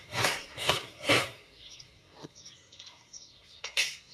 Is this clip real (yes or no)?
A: no